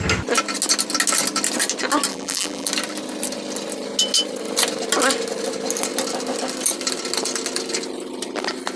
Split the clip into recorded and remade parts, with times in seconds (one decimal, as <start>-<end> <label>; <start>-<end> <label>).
0.0-2.1 recorded; 2.1-2.7 remade; 2.7-8.8 recorded